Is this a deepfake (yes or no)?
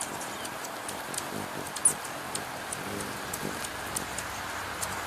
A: no